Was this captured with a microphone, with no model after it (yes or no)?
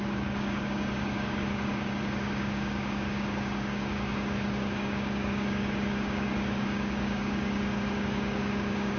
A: no